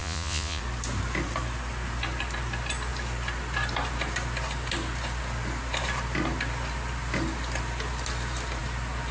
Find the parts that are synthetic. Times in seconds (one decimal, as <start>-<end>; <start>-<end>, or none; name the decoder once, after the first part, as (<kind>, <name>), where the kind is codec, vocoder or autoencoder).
0.0-0.6 (vocoder, Vocos)